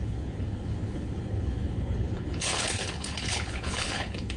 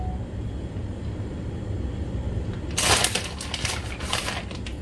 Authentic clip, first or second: second